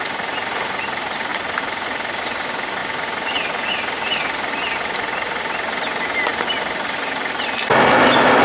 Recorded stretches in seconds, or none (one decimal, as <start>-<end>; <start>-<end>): 0.0-8.4